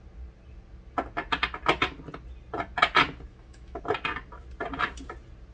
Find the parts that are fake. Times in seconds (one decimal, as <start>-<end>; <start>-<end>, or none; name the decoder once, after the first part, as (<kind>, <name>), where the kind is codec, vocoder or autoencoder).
3.3-3.8 (autoencoder, DAC-VAE)